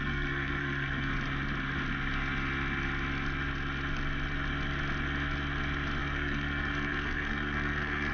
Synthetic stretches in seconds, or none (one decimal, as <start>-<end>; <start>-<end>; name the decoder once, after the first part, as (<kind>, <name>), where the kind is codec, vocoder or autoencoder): 0.0-1.1 (codec, SNAC); 6.0-8.1